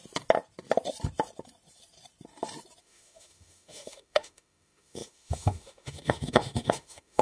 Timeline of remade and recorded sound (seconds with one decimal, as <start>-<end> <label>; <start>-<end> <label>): 0.0-2.8 recorded; 2.8-7.2 remade